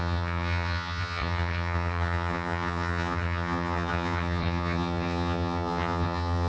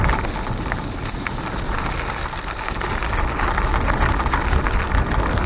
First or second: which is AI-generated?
first